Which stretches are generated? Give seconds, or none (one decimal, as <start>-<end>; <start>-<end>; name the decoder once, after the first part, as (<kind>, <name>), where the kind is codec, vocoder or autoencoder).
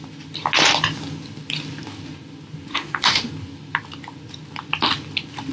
2.7-3.3 (autoencoder, DAC-VAE)